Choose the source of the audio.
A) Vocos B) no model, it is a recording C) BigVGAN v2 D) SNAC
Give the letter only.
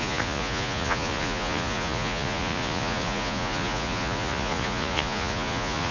A